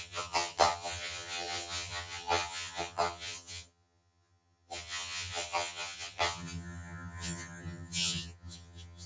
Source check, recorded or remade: remade